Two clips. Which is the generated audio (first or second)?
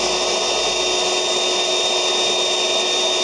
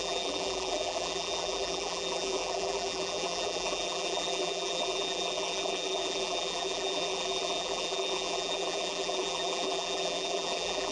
second